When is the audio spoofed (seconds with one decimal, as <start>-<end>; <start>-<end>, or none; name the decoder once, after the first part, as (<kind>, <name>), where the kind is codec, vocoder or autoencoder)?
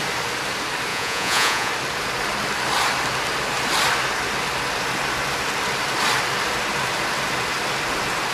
0.9-1.7 (vocoder, Vocos)